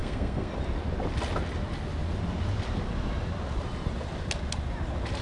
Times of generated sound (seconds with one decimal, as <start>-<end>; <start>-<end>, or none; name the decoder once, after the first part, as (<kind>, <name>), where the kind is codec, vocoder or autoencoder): 0.0-0.5 (codec, SNAC)